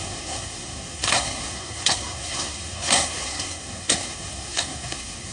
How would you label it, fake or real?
fake